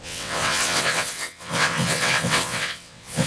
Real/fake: fake